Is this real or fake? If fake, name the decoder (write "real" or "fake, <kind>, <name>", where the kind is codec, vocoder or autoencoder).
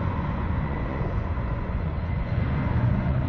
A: fake, vocoder, Vocos